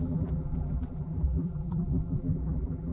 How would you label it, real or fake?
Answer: fake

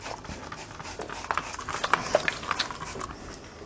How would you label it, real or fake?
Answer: real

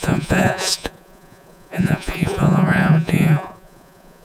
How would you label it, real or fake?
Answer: fake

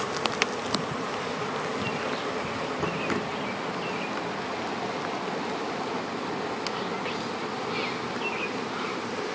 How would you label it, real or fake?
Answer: real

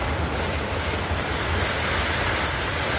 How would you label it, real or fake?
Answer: real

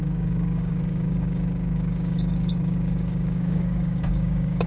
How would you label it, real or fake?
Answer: fake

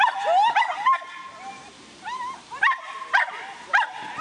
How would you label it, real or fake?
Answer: real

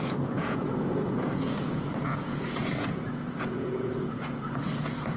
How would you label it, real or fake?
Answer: fake